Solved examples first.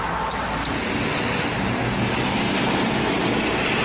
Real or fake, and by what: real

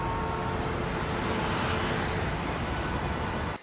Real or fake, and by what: real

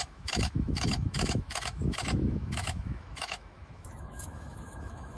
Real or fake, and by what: fake, autoencoder, DAC-VAE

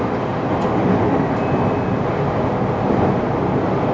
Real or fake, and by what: real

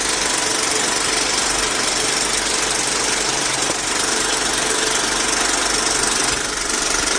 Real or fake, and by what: real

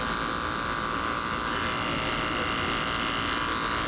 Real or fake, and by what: real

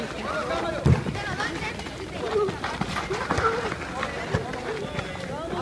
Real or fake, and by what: real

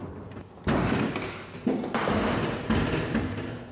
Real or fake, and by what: real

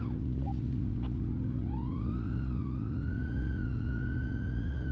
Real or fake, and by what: fake, vocoder, Vocos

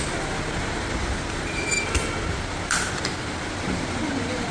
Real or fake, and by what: real